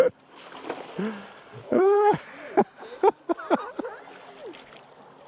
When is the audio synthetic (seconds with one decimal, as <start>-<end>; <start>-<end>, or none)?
1.6-2.1